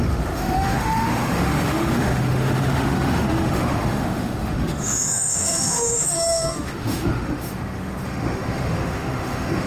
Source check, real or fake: fake